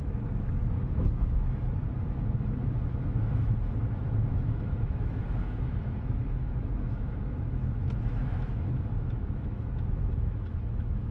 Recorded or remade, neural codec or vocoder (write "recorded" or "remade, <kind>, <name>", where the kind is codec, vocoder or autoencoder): remade, autoencoder, DAC-VAE